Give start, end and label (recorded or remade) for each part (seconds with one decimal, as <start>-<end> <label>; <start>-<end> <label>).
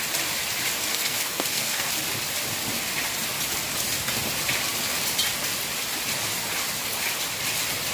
0.0-0.9 recorded; 0.9-1.9 remade; 1.9-7.9 recorded